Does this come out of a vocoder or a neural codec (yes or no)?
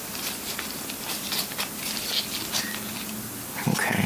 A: no